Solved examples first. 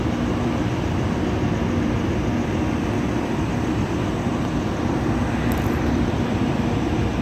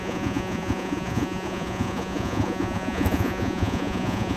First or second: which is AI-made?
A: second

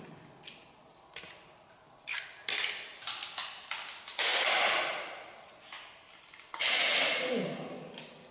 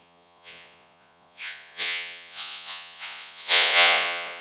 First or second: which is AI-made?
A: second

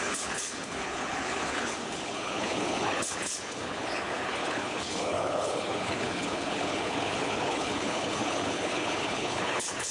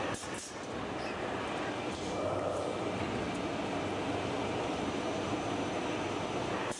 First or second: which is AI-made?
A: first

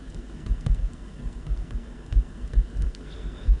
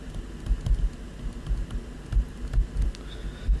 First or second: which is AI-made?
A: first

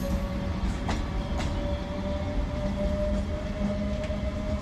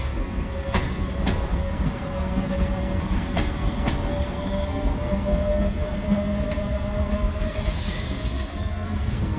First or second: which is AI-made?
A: second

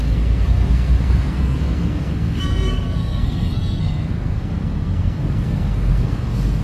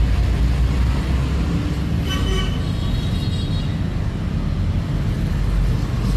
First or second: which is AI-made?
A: first